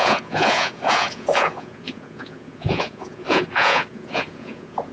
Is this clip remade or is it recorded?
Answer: remade